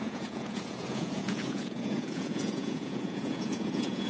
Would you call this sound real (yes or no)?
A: no